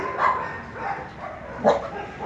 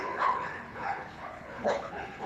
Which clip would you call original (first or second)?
first